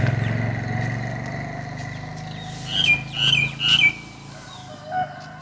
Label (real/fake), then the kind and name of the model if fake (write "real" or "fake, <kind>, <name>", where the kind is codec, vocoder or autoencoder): real